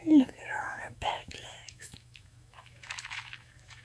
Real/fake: fake